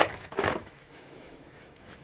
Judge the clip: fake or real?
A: fake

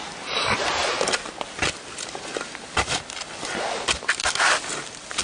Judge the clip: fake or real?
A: real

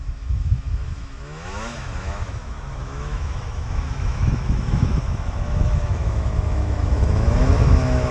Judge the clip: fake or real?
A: fake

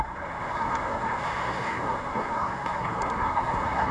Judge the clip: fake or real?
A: fake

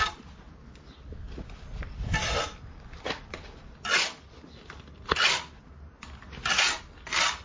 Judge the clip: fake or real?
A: real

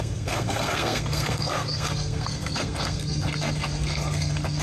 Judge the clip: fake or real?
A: fake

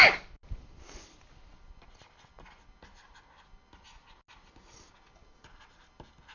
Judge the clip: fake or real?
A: real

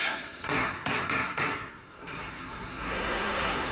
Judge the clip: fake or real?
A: fake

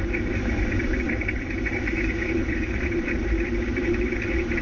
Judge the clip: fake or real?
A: fake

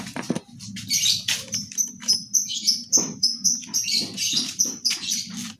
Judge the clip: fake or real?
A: fake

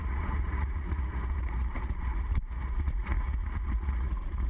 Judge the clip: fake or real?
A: fake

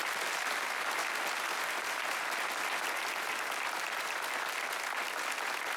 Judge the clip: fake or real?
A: real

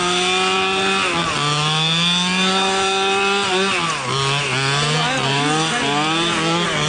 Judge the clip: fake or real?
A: real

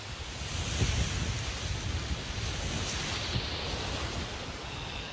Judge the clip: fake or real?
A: real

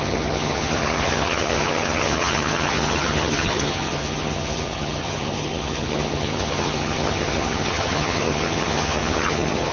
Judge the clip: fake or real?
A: fake